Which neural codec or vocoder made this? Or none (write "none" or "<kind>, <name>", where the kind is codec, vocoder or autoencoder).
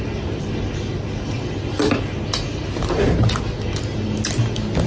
none